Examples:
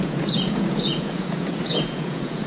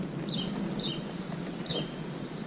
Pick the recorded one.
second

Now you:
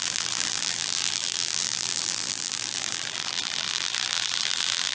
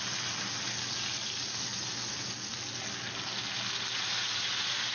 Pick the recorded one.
second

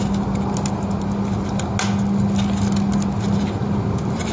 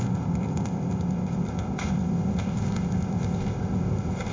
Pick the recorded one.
first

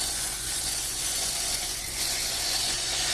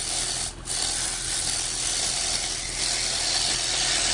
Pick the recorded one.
second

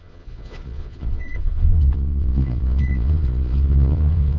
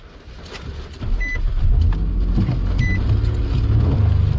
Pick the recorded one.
second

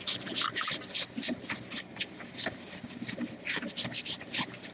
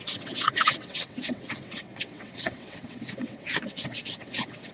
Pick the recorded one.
first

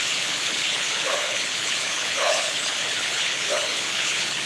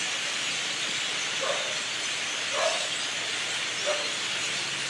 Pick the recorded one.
second